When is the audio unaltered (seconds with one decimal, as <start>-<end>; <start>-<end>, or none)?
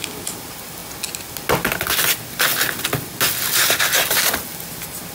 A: 0.0-5.1